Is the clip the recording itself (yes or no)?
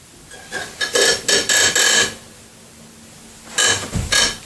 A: yes